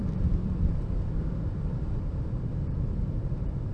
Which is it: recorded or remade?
remade